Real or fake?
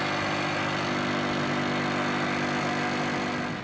real